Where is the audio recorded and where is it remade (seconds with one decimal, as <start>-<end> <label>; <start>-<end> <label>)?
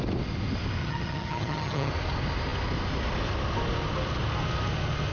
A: 0.0-0.8 recorded; 0.8-1.9 remade; 1.9-5.1 recorded